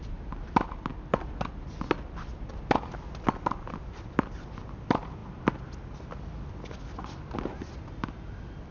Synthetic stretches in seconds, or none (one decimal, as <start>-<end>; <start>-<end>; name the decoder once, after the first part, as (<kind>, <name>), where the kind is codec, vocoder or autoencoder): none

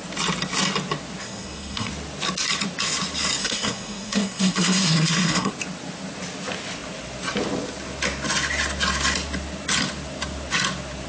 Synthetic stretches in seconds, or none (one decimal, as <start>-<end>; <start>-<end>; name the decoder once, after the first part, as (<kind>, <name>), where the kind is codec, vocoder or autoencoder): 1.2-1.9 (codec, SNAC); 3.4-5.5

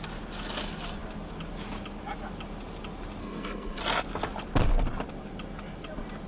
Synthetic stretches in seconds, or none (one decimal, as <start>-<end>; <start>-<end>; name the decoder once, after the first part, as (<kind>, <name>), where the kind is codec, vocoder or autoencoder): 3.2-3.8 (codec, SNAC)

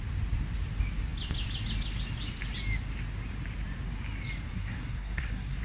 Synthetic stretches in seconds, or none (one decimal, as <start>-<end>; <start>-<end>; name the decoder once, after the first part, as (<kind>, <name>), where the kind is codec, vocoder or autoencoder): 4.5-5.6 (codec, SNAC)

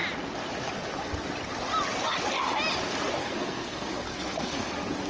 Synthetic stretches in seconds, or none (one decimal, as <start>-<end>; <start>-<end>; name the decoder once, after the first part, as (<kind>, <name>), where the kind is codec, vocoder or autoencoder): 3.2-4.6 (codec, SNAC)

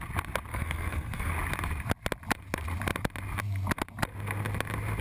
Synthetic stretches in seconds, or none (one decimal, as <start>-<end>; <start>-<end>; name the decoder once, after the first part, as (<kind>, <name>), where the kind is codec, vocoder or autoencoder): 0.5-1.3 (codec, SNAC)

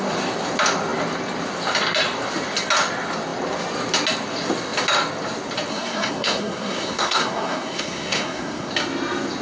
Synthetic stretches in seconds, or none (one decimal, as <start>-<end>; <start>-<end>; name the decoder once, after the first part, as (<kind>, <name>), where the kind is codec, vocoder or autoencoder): 5.7-8.7 (codec, SNAC)

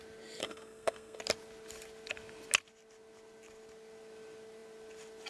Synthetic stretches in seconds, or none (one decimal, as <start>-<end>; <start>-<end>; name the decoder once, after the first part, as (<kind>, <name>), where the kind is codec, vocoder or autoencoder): 0.4-1.2 (codec, SNAC)